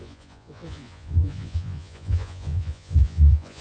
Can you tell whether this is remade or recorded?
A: remade